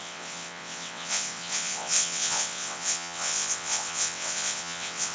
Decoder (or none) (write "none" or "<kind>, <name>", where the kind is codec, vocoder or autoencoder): vocoder, WaveNeXt